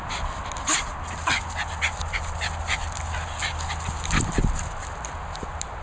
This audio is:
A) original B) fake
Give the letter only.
A